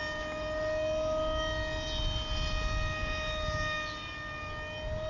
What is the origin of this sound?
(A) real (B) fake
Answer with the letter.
A